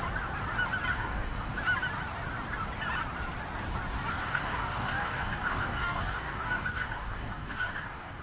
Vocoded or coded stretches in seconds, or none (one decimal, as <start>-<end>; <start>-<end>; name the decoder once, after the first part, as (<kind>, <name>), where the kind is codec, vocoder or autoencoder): 0.9-1.5 (codec, DAC); 4.1-8.2